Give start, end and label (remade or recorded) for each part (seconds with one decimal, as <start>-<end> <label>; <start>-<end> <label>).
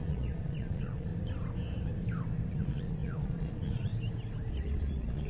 0.0-1.1 remade; 1.1-2.5 recorded; 2.5-3.9 remade; 3.9-4.5 recorded; 4.5-5.3 remade